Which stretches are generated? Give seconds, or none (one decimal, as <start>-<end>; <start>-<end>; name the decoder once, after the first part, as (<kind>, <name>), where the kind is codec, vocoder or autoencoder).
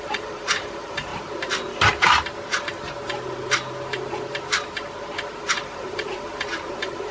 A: 0.0-1.1 (vocoder, BigVGAN v2); 5.4-7.1